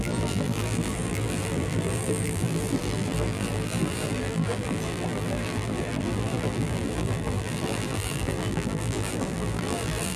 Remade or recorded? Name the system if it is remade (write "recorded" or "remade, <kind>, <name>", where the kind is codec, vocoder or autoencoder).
remade, vocoder, BigVGAN v2